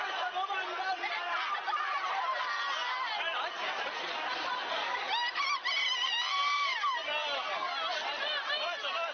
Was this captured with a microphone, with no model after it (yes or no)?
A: yes